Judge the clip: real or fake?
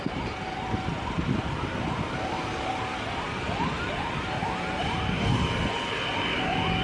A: real